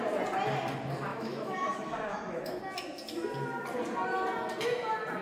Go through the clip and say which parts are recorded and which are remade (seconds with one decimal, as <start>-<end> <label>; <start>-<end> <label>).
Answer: 0.0-1.1 recorded; 1.1-2.6 remade; 2.6-5.2 recorded